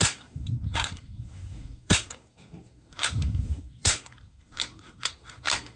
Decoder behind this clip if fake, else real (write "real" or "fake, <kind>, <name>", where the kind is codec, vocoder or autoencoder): fake, codec, SNAC